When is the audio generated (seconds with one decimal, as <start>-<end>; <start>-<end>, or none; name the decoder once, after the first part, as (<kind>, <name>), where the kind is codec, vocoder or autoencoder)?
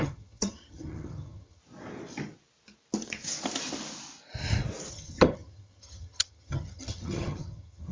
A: 0.0-1.6 (vocoder, HiFi-GAN); 4.9-7.9